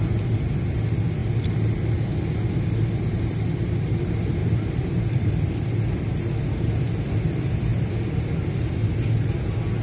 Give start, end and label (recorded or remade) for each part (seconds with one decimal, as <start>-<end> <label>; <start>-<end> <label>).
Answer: 0.0-4.4 recorded; 4.4-5.5 remade; 5.5-7.7 recorded; 7.7-8.9 remade; 8.9-9.8 recorded